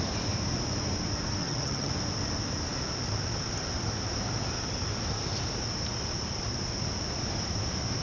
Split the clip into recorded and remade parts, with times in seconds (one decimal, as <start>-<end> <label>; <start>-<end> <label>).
0.0-1.4 recorded; 1.4-1.9 remade; 1.9-8.0 recorded